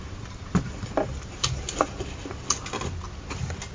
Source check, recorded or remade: recorded